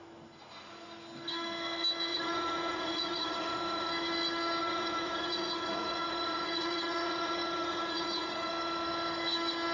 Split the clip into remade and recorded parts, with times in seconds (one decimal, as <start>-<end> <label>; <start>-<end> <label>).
0.0-2.1 recorded; 2.1-3.9 remade; 3.9-4.6 recorded; 4.6-8.5 remade; 8.5-9.7 recorded